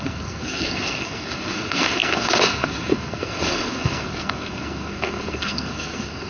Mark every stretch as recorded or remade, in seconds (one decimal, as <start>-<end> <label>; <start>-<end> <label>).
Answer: 0.0-6.3 remade